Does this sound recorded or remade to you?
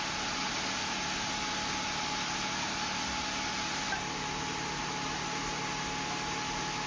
recorded